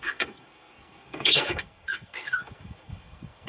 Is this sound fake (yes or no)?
yes